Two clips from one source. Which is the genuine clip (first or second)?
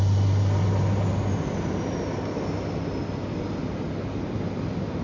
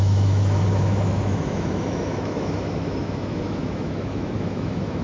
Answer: first